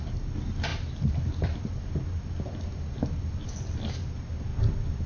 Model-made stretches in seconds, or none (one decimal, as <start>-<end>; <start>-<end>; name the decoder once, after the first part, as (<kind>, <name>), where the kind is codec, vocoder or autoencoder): none